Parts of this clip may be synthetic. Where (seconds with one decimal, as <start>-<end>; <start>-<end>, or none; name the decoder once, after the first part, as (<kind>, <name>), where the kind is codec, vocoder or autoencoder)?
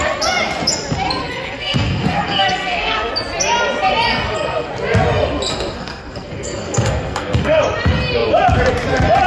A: 1.2-3.1 (codec, SNAC); 4.1-4.7; 5.5-7.6